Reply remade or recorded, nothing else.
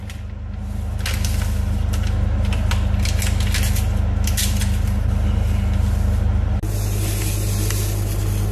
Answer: recorded